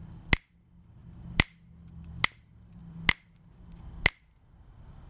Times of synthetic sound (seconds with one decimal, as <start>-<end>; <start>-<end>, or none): none